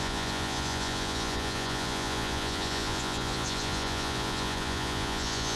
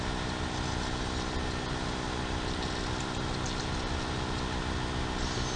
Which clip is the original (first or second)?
second